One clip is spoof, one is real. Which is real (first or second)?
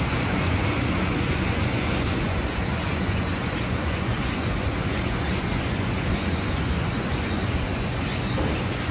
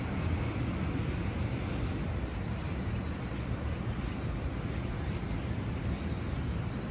second